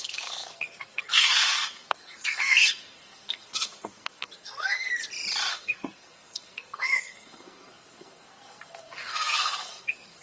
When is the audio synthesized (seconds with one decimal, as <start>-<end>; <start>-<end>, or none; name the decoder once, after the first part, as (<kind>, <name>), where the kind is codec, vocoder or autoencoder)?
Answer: 0.0-5.0 (codec, SNAC); 5.5-10.2